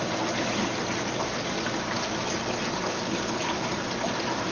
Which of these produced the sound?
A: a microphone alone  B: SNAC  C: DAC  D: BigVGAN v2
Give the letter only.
A